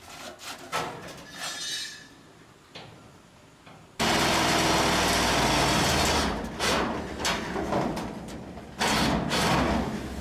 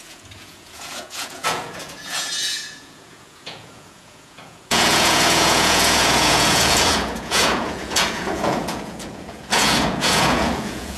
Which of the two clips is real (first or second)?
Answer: first